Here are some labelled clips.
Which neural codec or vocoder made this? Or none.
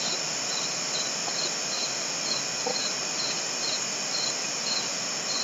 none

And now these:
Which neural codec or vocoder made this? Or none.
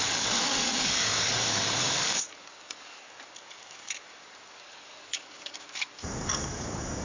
codec, DAC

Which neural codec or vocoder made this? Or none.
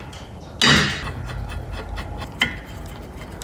none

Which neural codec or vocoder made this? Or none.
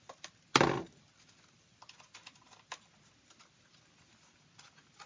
none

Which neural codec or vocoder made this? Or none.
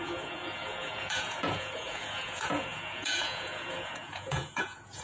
vocoder, Vocos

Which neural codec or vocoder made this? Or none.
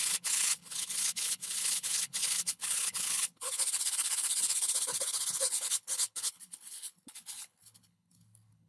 codec, HILCodec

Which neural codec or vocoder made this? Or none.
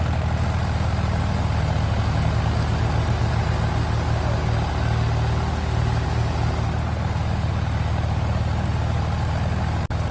none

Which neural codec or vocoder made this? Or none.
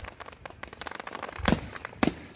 none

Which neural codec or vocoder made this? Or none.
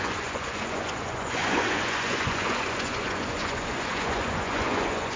vocoder, Vocos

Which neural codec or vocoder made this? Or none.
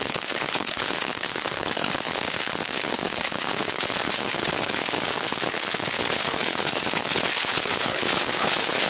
codec, HILCodec